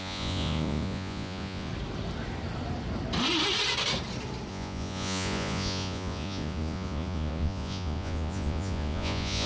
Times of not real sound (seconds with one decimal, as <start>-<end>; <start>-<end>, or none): 0.0-1.7; 4.5-9.5